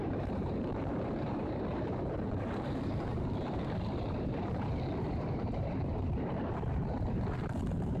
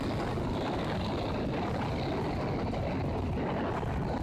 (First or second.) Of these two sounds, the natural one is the second